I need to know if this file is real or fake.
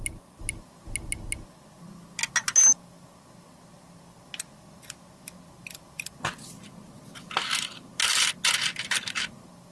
real